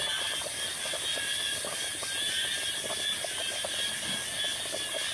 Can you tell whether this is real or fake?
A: real